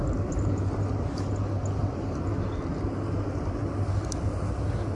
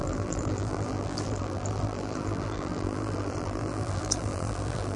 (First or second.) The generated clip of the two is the second